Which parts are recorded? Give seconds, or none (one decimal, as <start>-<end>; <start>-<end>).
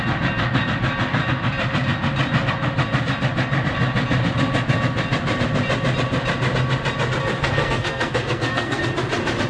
0.0-7.4; 8.8-9.5